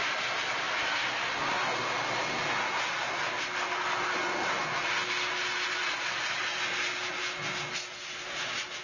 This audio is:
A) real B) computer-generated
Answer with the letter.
A